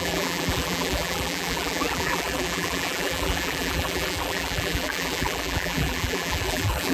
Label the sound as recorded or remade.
remade